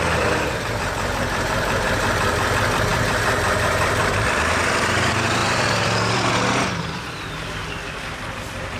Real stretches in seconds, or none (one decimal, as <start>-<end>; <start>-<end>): none